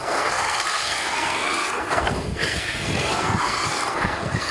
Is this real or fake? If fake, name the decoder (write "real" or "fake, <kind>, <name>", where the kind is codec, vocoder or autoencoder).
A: fake, codec, SNAC